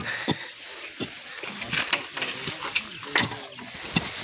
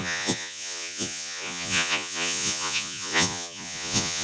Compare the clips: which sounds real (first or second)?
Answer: first